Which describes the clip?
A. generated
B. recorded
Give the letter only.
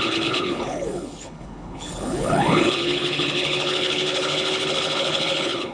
A